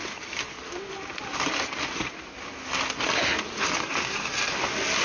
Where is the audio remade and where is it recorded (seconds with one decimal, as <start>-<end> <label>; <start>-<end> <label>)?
0.0-5.0 recorded